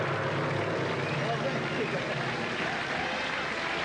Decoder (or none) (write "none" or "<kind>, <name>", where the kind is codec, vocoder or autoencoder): none